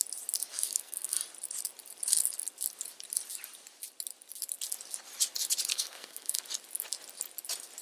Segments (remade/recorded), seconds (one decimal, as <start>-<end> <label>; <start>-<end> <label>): 0.0-0.5 recorded; 0.5-1.2 remade; 1.2-5.7 recorded; 5.7-6.4 remade; 6.4-7.8 recorded